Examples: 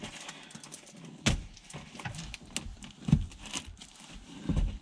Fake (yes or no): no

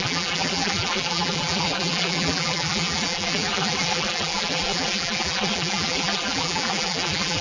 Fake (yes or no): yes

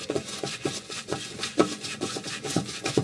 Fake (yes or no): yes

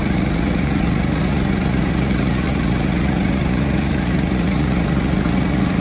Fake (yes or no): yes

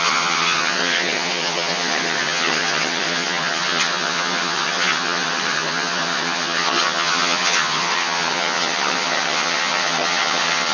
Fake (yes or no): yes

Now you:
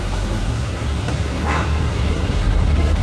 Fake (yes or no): yes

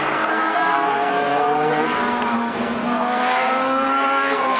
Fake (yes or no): yes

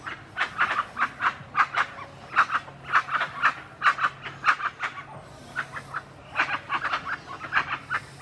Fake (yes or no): no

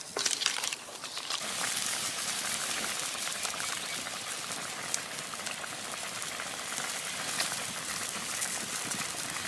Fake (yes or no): yes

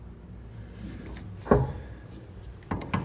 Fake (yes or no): no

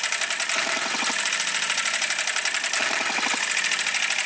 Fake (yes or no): no